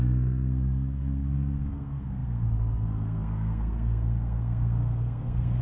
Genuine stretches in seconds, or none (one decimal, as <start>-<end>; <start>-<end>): none